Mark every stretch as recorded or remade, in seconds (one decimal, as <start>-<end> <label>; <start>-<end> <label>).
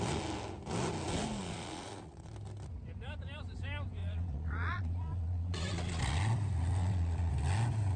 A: 0.0-1.4 recorded; 1.4-2.3 remade; 2.3-4.0 recorded; 4.0-6.0 remade; 6.0-6.8 recorded; 6.8-7.3 remade; 7.3-8.0 recorded